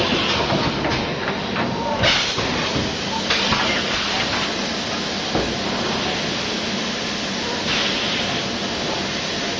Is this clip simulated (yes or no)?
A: no